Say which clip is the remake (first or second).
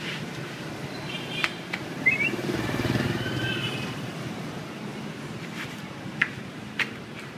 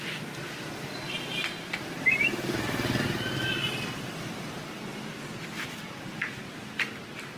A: first